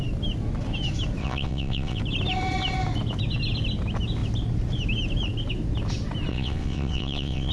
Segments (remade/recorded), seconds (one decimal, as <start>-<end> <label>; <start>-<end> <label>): 0.0-1.2 recorded; 1.2-2.0 remade; 2.0-6.3 recorded; 6.3-7.5 remade